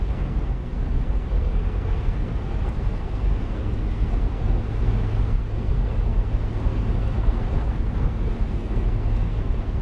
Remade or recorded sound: remade